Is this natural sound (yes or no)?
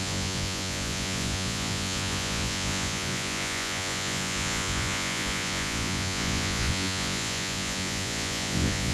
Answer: no